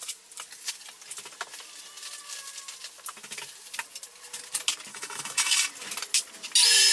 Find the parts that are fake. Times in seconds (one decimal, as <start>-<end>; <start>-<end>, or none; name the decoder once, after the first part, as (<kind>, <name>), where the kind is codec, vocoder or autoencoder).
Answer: 4.9-5.7 (autoencoder, DAC-VAE)